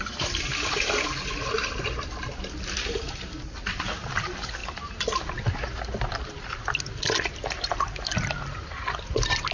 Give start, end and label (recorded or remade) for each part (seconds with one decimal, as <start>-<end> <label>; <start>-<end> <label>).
0.0-9.5 recorded